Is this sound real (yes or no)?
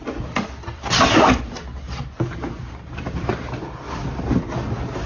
yes